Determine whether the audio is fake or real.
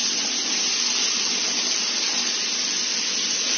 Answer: real